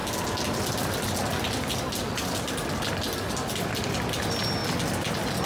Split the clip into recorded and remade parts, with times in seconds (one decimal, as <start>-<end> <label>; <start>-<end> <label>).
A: 0.0-5.5 recorded